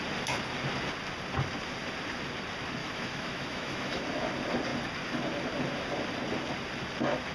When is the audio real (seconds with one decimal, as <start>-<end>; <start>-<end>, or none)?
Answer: 0.0-2.8; 4.0-7.3